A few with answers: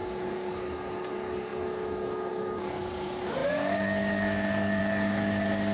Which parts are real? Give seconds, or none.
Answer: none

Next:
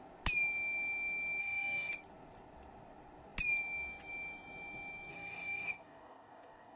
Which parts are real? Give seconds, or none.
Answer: 0.0-1.4; 1.9-5.1

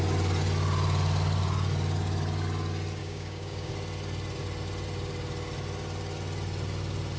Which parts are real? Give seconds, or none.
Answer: 0.0-3.0; 3.7-7.2

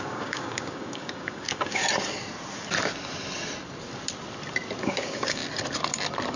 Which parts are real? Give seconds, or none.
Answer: 1.8-4.8; 5.4-6.4

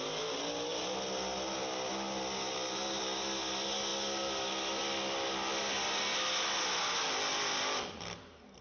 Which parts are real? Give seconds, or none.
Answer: 0.0-8.6

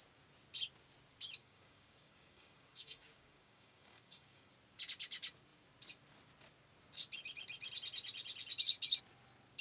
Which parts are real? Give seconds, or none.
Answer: 0.0-1.4; 4.5-9.6

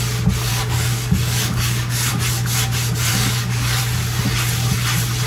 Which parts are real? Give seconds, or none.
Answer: 0.0-0.5; 2.1-3.1; 3.8-5.3